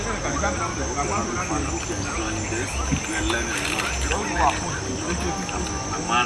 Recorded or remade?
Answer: recorded